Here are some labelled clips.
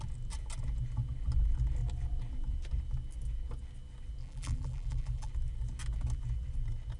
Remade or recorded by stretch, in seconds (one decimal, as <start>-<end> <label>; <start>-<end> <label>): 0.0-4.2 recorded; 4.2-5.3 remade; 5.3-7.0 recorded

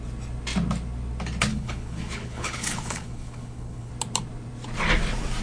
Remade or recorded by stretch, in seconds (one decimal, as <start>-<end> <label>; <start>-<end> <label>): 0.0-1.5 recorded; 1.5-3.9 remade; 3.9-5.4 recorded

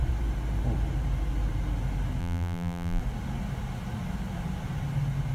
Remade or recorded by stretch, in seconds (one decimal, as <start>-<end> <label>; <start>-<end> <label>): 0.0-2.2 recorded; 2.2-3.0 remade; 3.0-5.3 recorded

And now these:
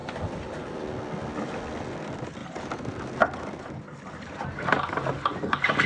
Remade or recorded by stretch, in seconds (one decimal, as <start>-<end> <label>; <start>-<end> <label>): 0.0-5.9 recorded

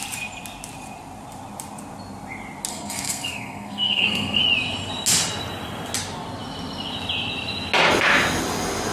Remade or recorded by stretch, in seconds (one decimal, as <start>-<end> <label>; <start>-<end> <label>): 0.0-2.7 recorded; 2.7-4.4 remade; 4.4-8.9 recorded

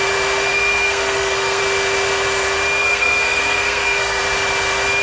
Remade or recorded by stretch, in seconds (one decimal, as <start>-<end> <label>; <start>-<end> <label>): 0.0-0.5 recorded; 0.5-1.6 remade; 1.6-2.8 recorded; 2.8-4.2 remade; 4.2-5.0 recorded

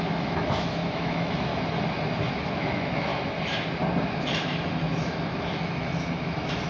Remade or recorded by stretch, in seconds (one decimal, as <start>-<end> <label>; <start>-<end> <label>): 0.0-1.5 remade; 1.5-2.3 recorded; 2.3-3.1 remade; 3.1-4.0 recorded; 4.0-6.7 remade